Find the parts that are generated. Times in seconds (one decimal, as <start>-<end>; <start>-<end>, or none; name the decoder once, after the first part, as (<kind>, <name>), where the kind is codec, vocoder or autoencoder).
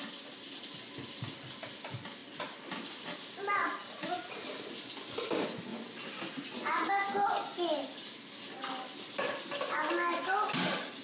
none